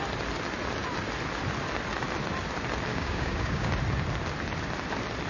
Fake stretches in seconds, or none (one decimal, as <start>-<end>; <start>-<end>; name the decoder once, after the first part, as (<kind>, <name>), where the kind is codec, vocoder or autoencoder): 2.9-3.7 (codec, DAC)